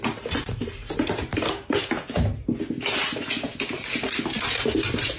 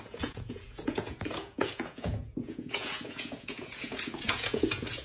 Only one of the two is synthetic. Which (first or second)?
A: second